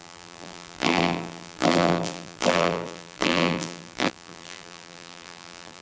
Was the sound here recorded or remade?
remade